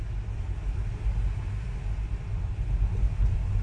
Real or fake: real